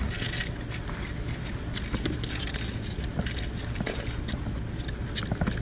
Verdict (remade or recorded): recorded